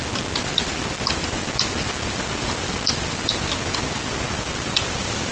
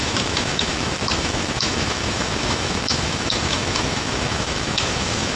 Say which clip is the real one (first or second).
first